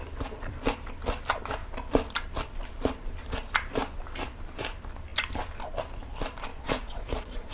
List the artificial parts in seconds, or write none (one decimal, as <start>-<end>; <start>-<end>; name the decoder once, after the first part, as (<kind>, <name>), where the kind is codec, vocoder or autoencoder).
6.5-7.5 (vocoder, Vocos)